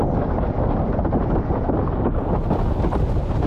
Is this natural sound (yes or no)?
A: yes